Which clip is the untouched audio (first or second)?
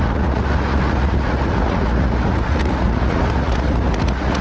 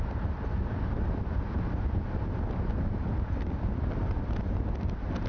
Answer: second